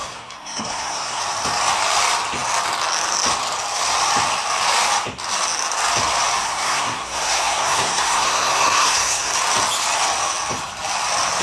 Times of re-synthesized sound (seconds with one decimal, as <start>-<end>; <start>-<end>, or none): 0.0-1.2; 6.4-9.3